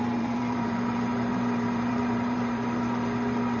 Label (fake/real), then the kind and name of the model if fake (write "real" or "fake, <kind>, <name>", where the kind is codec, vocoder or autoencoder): fake, vocoder, BigVGAN v2